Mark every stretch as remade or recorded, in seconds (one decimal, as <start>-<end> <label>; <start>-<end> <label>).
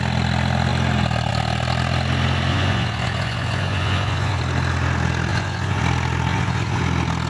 0.0-2.5 recorded; 2.5-4.4 remade; 4.4-5.3 recorded; 5.3-5.8 remade; 5.8-6.3 recorded; 6.3-6.8 remade; 6.8-7.3 recorded